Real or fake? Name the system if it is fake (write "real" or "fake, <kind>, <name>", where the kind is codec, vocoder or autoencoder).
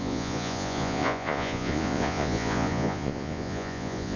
fake, vocoder, Vocos